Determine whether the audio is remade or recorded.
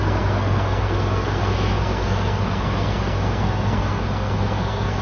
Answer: remade